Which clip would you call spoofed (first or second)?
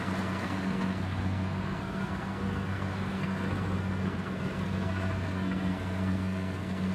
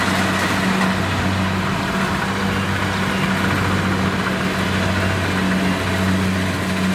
first